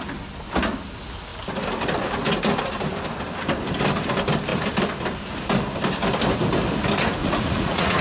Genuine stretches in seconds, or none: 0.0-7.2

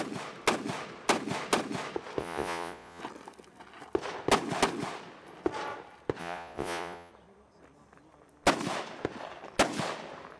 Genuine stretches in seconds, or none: 0.0-2.2; 3.0-6.2; 7.1-10.4

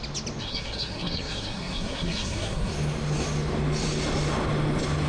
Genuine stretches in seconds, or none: 0.0-0.4; 2.7-5.1

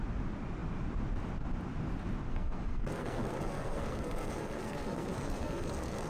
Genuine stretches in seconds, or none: 0.0-2.3

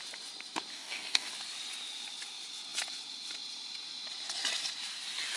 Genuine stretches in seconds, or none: 0.0-0.7; 1.3-5.4